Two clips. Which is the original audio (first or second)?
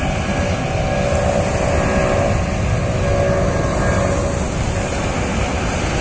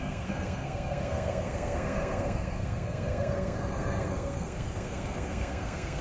first